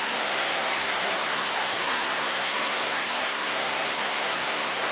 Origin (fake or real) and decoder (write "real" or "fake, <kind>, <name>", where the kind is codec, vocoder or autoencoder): fake, codec, SNAC